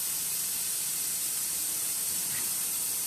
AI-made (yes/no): yes